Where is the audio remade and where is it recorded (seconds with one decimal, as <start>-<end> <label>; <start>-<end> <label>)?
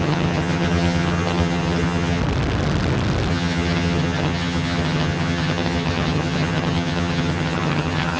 0.0-2.2 remade; 2.2-3.3 recorded; 3.3-8.2 remade